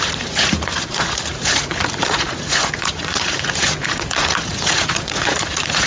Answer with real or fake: fake